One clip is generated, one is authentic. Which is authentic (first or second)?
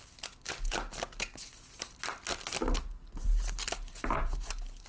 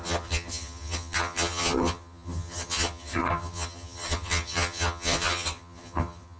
first